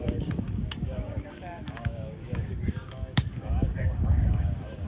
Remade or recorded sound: remade